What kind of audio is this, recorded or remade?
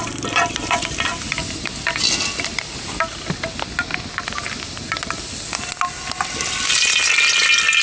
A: recorded